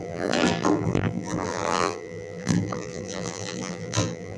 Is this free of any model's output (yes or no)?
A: no